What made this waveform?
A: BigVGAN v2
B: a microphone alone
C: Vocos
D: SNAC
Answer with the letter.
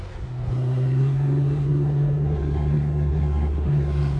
D